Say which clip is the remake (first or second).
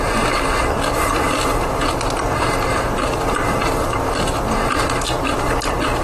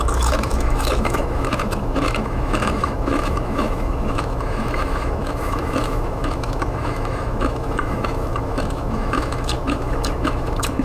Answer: second